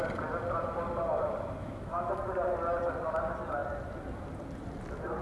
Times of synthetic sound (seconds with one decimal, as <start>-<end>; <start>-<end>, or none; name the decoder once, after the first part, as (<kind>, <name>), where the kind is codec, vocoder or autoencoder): 1.6-2.1 (autoencoder, DAC-VAE)